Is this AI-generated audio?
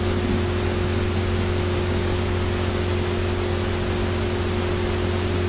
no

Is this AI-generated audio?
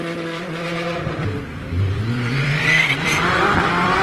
yes